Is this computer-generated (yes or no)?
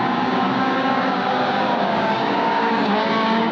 yes